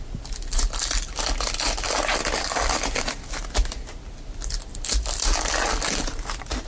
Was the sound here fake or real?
real